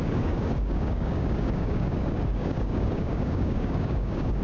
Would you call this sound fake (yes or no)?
yes